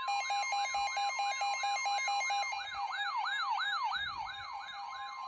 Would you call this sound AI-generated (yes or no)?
no